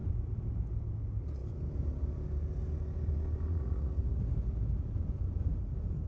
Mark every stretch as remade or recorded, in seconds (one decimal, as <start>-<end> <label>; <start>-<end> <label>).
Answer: 0.0-3.5 recorded; 3.5-4.0 remade; 4.0-6.1 recorded